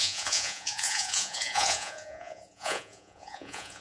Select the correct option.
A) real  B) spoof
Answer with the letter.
B